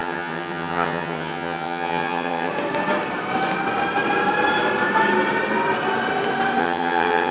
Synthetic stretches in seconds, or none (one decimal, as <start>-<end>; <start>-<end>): 0.0-2.5; 6.6-7.3